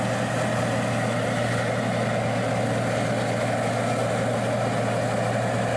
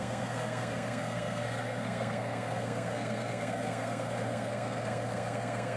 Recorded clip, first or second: first